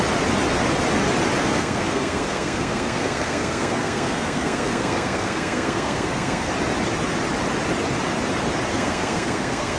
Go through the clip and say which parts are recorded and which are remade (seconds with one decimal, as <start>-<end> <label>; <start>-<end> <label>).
0.0-1.4 recorded; 1.4-6.5 remade; 6.5-8.7 recorded; 8.7-9.8 remade